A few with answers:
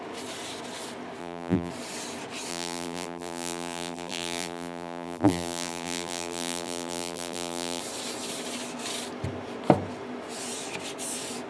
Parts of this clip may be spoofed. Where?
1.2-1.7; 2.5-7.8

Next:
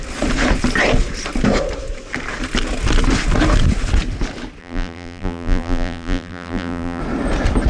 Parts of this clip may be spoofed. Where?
4.6-7.0

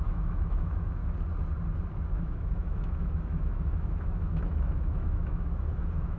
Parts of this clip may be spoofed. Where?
0.0-1.0; 2.1-6.2

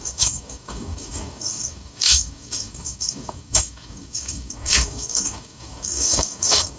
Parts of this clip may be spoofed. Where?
0.0-6.8